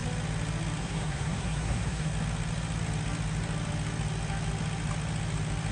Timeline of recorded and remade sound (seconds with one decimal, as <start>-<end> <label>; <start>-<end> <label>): 0.0-0.8 recorded; 0.8-2.1 remade; 2.1-5.7 recorded